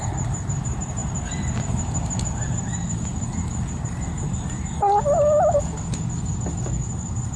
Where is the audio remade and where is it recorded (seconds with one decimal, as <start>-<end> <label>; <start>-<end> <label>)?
0.0-3.1 remade; 3.1-7.4 recorded